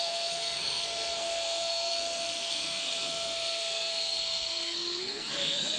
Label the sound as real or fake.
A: fake